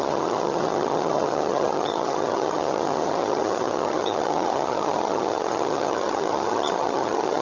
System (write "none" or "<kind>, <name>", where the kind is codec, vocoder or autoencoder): vocoder, HiFi-GAN